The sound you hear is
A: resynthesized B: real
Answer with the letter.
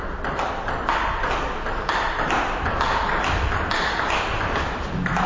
B